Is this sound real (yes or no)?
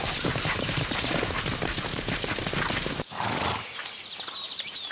yes